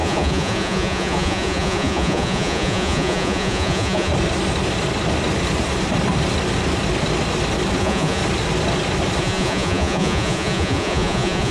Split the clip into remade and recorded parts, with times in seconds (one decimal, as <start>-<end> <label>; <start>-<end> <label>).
0.0-4.1 remade; 4.1-7.8 recorded; 7.8-8.2 remade; 8.2-9.2 recorded; 9.2-11.5 remade